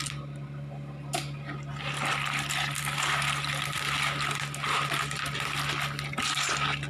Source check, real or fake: real